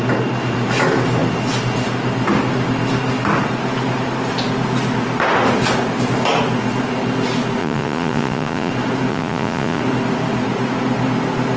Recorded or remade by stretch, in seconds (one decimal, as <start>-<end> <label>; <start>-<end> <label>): 0.0-7.6 recorded; 7.6-8.7 remade; 8.7-9.1 recorded; 9.1-9.8 remade; 9.8-11.6 recorded